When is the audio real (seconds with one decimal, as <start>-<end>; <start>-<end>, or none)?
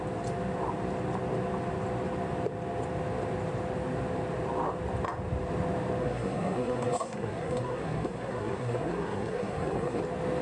0.0-6.0; 10.0-10.4